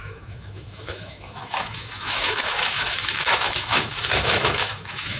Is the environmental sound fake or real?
fake